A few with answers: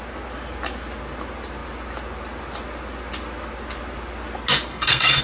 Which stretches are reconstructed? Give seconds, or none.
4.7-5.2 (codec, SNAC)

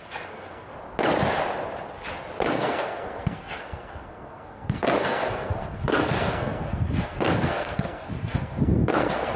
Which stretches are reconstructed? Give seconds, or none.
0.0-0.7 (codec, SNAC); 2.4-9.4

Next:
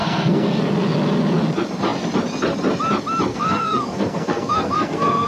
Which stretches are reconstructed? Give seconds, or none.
0.0-0.6 (codec, SNAC); 3.3-5.3